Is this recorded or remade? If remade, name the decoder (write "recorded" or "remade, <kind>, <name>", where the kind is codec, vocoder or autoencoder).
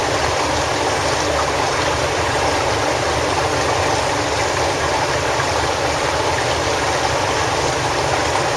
recorded